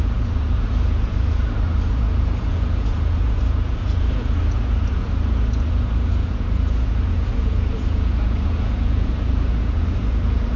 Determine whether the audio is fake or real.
fake